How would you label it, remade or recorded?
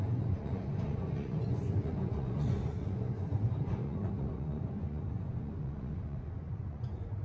remade